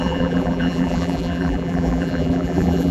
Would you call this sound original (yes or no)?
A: no